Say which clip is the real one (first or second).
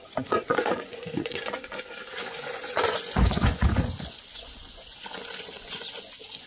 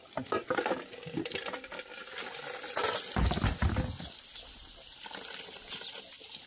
second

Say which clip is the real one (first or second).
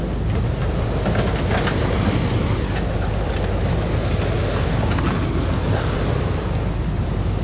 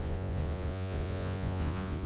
first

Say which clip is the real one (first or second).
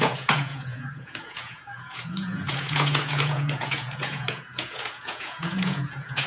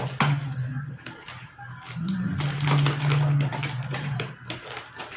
second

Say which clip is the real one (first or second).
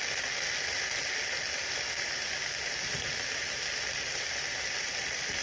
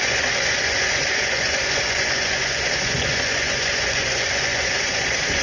first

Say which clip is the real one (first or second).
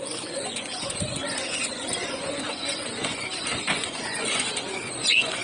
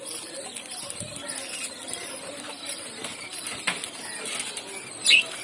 second